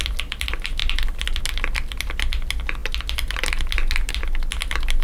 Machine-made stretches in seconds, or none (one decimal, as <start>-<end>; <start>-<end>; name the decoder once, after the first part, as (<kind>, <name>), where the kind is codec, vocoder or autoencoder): 0.8-1.4 (vocoder, BigVGAN v2)